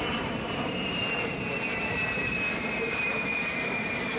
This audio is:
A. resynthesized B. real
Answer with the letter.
A